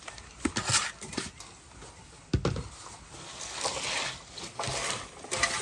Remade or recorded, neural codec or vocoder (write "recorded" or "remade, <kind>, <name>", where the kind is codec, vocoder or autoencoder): recorded